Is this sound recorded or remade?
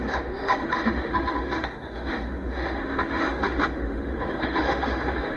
remade